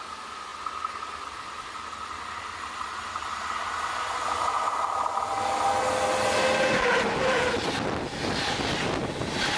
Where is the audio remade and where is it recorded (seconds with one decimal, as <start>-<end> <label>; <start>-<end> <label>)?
0.0-9.6 recorded